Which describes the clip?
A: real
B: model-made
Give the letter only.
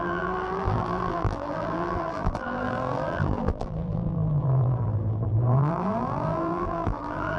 B